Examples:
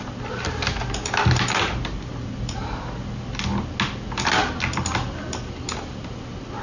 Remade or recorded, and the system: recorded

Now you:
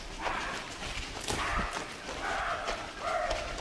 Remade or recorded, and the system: recorded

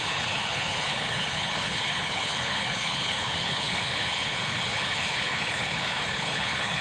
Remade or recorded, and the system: remade, codec, HILCodec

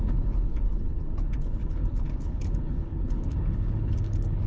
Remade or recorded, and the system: remade, codec, HILCodec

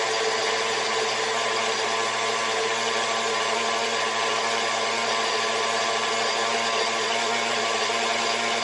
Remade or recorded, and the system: recorded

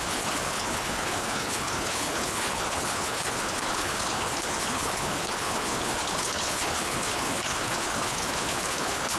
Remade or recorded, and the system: remade, codec, HILCodec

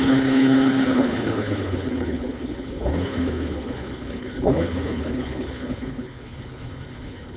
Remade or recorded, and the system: remade, codec, HILCodec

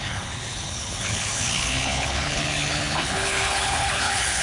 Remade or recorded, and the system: remade, codec, HILCodec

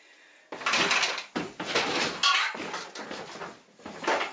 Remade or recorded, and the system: recorded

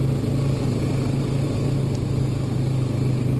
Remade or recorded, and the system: recorded